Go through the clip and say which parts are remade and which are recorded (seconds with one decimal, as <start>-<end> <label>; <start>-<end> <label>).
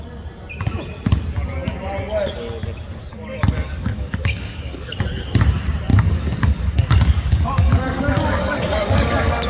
0.0-3.1 recorded; 3.1-4.9 remade; 4.9-5.9 recorded; 5.9-9.5 remade